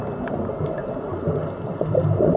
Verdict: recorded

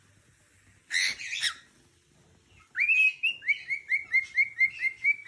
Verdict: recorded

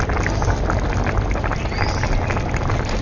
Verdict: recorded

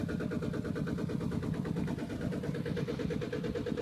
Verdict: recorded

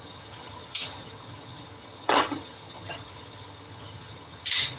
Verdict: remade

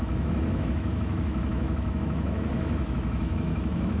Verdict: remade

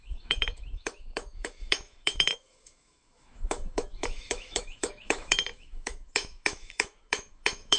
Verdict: remade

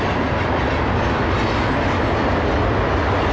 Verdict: recorded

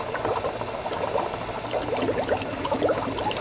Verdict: recorded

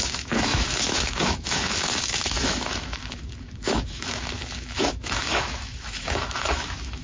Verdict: remade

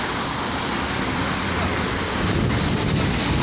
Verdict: recorded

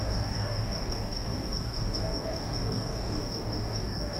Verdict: remade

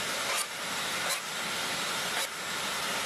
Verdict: recorded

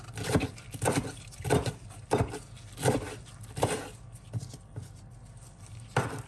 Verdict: recorded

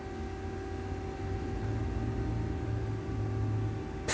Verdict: recorded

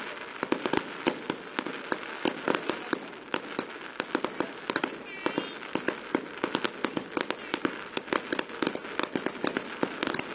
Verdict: recorded